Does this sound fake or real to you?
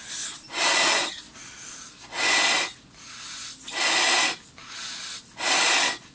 real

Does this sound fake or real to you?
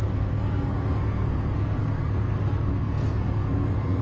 fake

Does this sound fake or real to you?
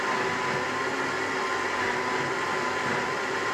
real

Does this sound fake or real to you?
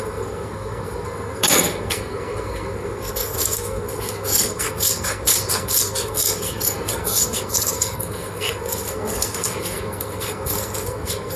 fake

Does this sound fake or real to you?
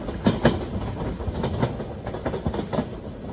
real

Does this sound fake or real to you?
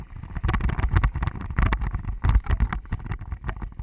real